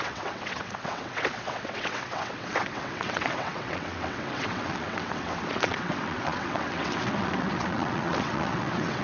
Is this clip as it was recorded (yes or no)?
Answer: no